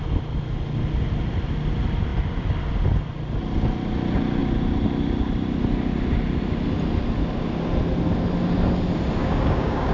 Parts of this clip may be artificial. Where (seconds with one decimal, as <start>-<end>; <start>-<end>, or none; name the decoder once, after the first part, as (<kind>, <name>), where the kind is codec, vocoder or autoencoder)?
9.2-9.9 (codec, DAC)